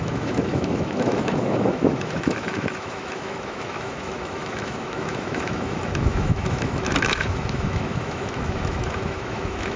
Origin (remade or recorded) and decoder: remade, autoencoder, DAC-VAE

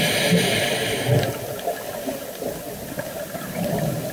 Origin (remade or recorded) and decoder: recorded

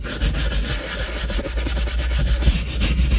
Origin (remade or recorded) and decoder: recorded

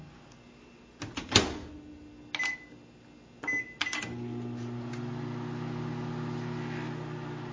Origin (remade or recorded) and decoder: recorded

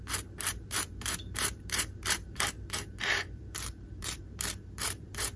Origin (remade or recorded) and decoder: remade, vocoder, BigVGAN v2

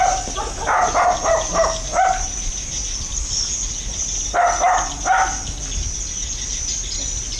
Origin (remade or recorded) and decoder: recorded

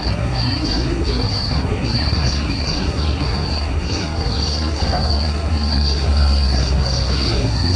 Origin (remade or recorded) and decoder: remade, codec, SNAC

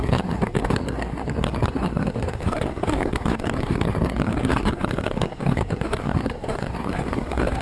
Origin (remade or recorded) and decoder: remade, codec, SNAC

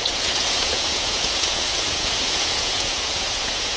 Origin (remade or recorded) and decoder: remade, vocoder, Vocos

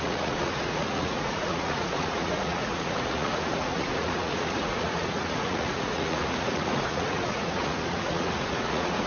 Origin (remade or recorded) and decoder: remade, vocoder, Vocos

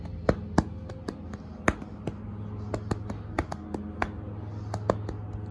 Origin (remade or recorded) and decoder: recorded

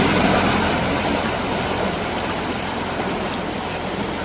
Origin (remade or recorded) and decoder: remade, vocoder, BigVGAN v2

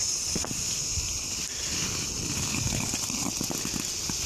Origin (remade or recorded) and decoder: recorded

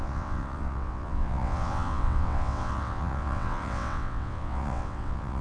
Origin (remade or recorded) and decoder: remade, vocoder, WaveNeXt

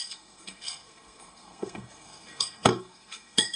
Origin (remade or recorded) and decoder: remade, codec, SNAC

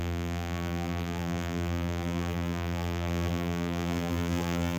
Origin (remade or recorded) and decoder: remade, vocoder, BigVGAN v2